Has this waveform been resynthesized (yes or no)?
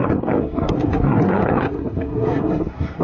yes